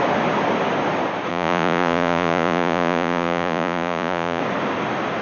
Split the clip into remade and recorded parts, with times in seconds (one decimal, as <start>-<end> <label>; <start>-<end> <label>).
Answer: 0.0-1.3 recorded; 1.3-4.4 remade; 4.4-5.2 recorded